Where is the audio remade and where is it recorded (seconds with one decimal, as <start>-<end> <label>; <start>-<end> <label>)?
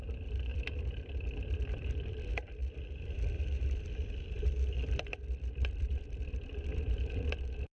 0.0-7.8 remade